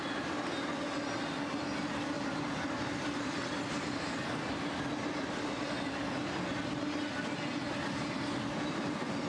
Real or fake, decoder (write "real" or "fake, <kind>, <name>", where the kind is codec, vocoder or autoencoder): real